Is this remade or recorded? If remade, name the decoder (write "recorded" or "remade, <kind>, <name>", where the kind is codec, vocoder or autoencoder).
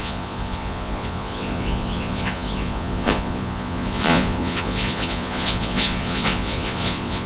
remade, vocoder, Vocos